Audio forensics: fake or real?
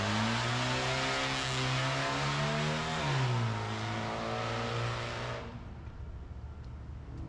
real